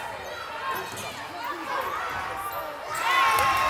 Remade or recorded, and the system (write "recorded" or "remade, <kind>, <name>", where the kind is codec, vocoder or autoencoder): recorded